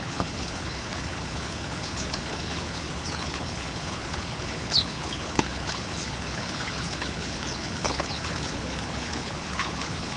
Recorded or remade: remade